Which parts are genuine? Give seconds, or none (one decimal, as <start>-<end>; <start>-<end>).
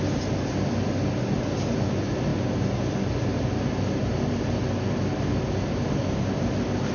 0.0-6.9